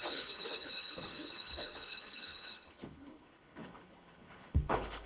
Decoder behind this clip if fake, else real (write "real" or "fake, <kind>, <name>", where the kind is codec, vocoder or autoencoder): fake, codec, HILCodec